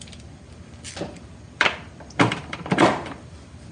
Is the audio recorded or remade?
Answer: remade